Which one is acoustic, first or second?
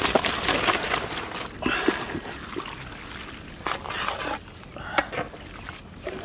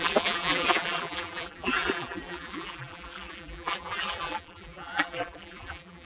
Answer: first